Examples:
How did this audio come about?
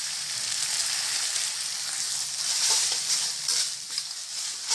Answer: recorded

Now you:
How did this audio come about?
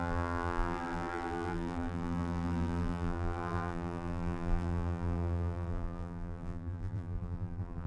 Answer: remade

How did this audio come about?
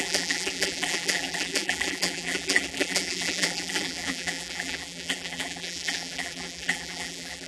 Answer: remade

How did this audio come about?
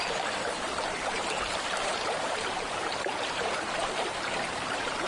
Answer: remade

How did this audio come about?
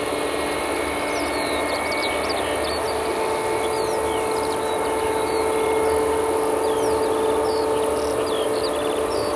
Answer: recorded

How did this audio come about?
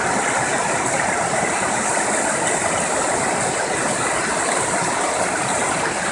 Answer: remade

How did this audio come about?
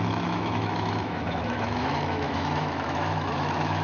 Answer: remade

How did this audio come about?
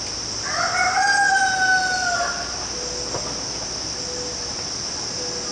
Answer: recorded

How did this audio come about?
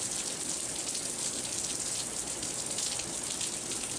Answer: recorded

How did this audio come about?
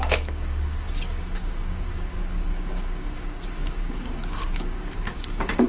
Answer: remade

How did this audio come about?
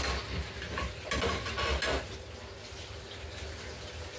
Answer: recorded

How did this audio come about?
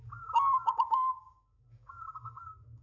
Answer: remade